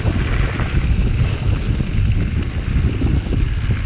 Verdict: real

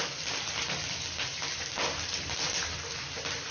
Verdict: real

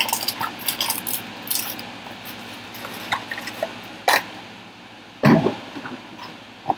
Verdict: real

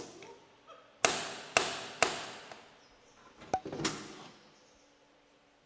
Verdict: real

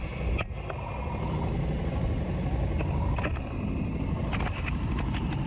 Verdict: real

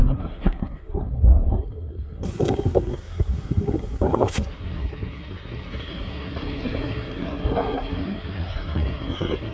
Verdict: fake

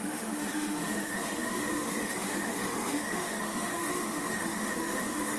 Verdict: fake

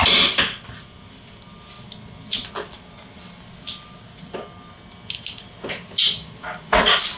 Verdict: real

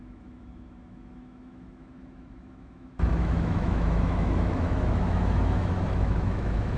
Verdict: fake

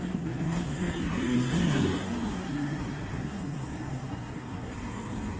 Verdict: fake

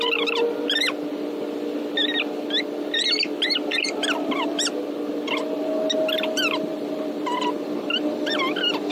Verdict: real